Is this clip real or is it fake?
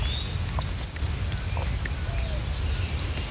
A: real